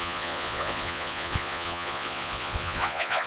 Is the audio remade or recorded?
remade